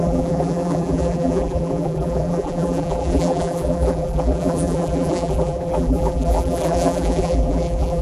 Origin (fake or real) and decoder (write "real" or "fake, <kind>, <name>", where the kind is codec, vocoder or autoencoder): fake, vocoder, BigVGAN v2